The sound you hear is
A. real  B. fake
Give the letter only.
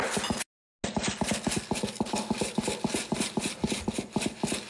A